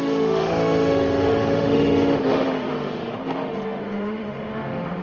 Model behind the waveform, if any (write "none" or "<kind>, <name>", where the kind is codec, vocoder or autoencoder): autoencoder, DAC-VAE